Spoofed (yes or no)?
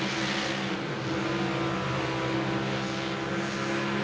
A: no